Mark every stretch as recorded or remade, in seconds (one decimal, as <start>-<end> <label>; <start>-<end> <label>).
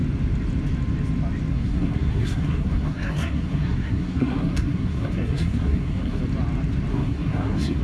0.0-1.5 recorded; 1.5-6.2 remade; 6.2-6.9 recorded; 6.9-7.8 remade